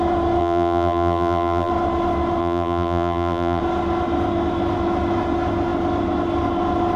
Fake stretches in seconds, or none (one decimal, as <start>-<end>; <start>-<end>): 0.4-1.7; 2.4-3.6

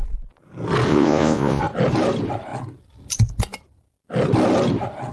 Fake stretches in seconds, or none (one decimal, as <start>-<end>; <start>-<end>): 0.9-1.6

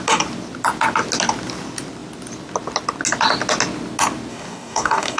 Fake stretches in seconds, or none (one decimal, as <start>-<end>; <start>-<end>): 4.3-5.2

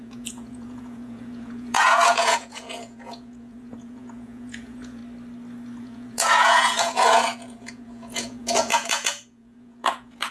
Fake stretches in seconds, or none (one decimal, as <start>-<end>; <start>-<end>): 0.0-5.0; 5.8-10.3

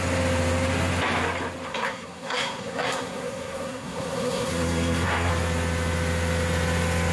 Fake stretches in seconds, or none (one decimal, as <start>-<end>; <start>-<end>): 1.7-5.3

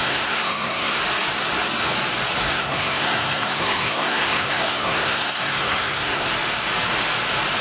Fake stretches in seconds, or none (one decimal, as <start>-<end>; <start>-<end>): 0.0-1.0; 2.4-6.3